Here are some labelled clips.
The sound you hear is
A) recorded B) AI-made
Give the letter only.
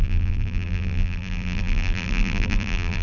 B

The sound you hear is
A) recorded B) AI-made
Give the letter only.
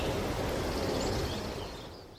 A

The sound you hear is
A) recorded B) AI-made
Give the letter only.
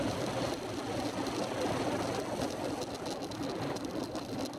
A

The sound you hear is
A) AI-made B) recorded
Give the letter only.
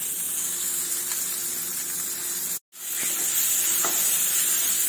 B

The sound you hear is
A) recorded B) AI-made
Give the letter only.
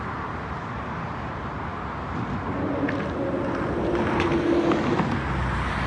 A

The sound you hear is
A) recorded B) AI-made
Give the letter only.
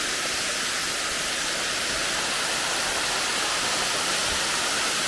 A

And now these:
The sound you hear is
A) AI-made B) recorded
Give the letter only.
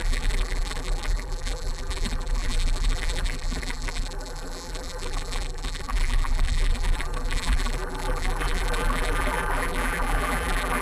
A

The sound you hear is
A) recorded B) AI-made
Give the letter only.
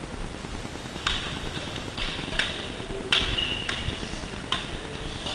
A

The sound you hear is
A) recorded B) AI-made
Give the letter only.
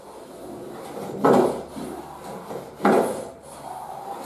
A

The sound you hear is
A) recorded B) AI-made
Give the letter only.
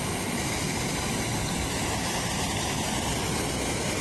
A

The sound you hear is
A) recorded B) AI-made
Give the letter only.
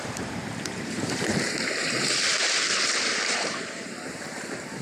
B